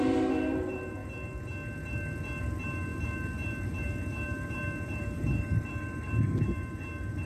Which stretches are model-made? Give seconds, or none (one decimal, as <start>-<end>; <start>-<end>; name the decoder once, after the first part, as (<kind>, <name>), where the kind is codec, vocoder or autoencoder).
0.0-1.0 (vocoder, BigVGAN v2); 2.4-7.3